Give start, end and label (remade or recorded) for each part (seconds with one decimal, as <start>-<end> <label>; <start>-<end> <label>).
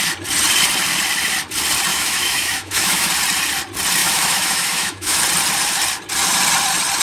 0.0-1.9 recorded; 1.9-3.1 remade; 3.1-4.0 recorded; 4.0-5.2 remade; 5.2-7.0 recorded